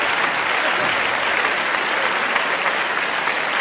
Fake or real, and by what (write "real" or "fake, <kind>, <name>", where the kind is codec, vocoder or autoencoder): real